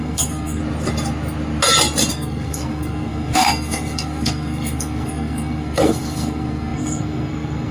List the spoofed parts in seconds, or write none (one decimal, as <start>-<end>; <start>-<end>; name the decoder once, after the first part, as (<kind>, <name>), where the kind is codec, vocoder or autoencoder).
0.0-0.6 (codec, SNAC); 2.1-7.7